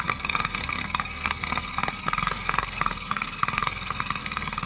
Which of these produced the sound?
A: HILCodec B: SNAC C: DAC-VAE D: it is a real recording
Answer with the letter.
B